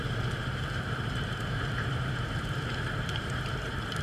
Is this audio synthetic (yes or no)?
yes